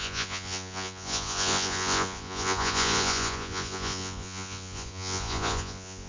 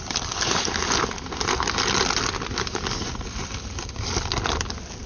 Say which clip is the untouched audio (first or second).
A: second